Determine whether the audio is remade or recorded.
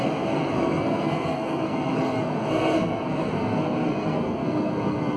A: remade